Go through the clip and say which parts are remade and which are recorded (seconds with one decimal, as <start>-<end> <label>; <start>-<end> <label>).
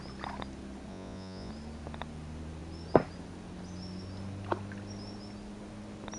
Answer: 0.0-0.9 recorded; 0.9-1.5 remade; 1.5-6.2 recorded